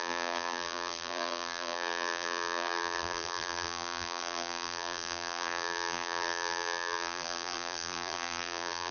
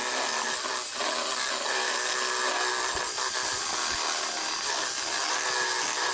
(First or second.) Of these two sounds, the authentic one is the second